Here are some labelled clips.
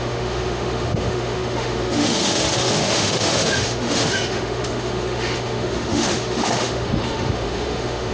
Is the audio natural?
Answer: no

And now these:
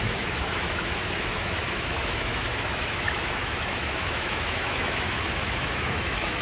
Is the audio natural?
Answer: no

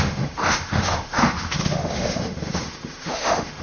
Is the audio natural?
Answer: no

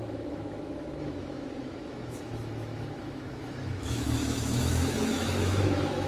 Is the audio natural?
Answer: no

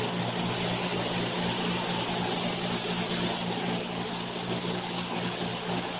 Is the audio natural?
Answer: yes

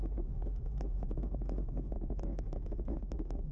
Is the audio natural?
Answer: no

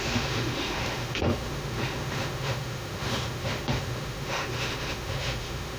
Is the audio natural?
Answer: no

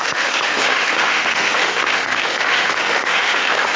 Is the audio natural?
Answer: no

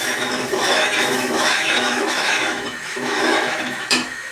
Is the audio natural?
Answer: no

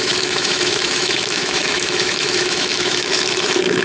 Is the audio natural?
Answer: no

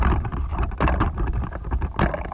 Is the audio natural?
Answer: yes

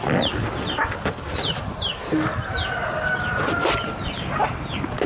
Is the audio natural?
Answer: yes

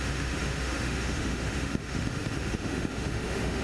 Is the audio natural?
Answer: no